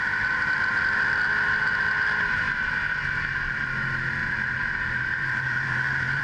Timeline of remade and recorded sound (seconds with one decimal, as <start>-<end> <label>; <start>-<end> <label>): 0.0-4.2 recorded; 4.2-6.2 remade